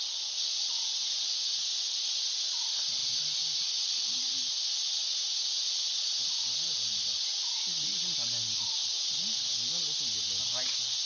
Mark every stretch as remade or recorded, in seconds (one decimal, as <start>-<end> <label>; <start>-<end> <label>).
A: 0.0-11.1 recorded